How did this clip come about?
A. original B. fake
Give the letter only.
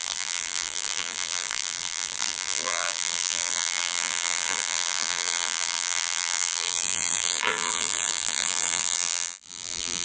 B